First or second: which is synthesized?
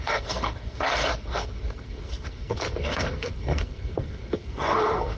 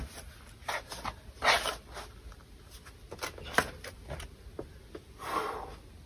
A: first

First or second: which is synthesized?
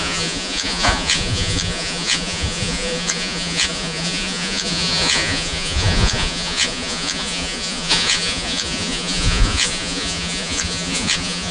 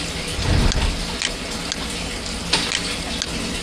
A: first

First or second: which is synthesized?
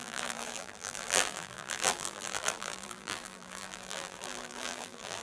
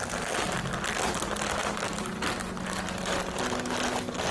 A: first